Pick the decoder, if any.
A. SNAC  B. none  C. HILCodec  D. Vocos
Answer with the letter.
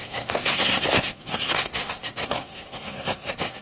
A